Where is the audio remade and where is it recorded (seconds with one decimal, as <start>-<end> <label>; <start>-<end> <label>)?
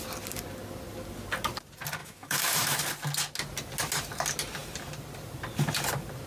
0.0-2.0 recorded; 2.0-2.8 remade; 2.8-6.3 recorded